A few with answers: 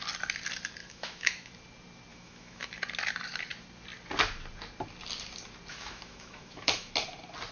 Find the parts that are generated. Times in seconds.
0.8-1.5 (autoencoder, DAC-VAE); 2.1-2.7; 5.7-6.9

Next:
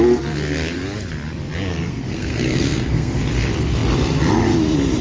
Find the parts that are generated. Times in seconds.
1.7-3.2 (codec, SNAC)

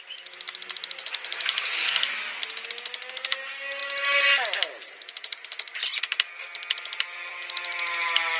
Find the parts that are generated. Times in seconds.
none

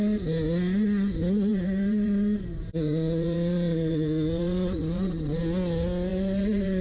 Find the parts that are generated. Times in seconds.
1.5-5.4 (vocoder, BigVGAN v2); 6.1-6.8

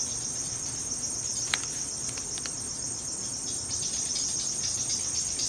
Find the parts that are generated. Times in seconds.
none

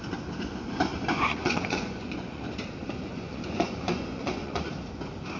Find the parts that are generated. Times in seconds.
0.9-2.4 (vocoder, Vocos); 2.8-4.7

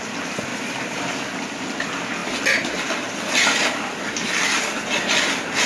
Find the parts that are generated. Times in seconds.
0.5-1.1 (vocoder, BigVGAN v2)